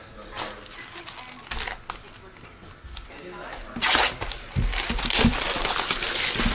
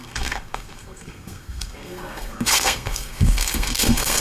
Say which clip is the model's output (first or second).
second